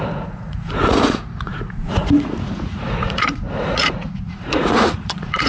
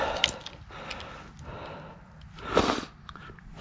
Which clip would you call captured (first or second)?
second